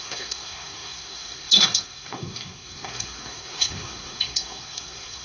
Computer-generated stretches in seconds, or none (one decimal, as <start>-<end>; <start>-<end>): 0.0-5.2